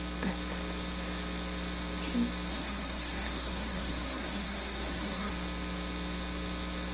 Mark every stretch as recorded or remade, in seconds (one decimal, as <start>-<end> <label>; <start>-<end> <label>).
0.0-2.5 recorded; 2.5-5.3 remade; 5.3-6.9 recorded